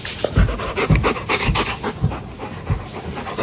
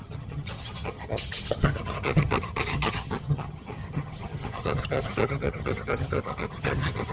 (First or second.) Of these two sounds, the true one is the first